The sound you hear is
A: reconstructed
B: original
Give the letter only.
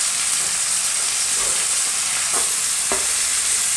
B